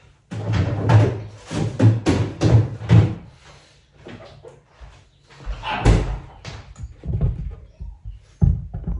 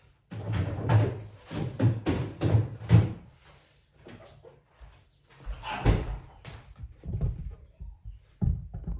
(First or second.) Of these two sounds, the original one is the first